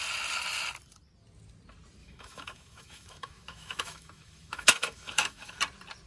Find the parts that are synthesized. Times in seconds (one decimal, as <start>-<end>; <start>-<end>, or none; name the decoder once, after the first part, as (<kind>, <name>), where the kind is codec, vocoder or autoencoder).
2.0-5.6 (autoencoder, DAC-VAE)